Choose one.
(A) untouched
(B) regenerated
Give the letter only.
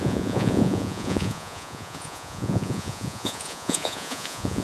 B